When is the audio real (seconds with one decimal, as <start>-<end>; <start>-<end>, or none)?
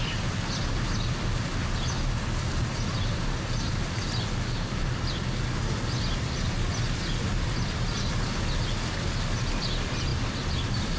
0.0-11.0